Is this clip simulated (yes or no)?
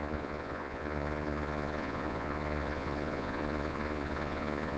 yes